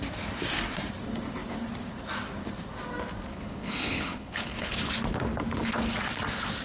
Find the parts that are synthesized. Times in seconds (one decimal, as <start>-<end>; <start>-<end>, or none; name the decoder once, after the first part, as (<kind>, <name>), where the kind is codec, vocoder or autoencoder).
3.3-4.9 (codec, HILCodec)